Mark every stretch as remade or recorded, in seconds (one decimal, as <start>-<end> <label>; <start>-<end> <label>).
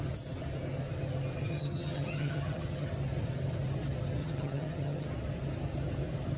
0.0-1.4 recorded; 1.4-2.9 remade; 2.9-4.2 recorded; 4.2-5.1 remade; 5.1-6.4 recorded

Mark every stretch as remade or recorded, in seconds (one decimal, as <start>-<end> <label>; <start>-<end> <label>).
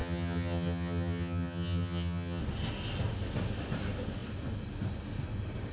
0.0-2.4 remade; 2.4-5.7 recorded